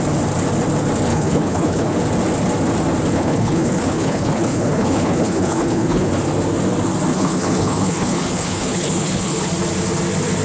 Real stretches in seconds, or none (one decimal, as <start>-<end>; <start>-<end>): 0.0-1.1; 2.0-3.1; 6.1-7.1; 9.5-10.4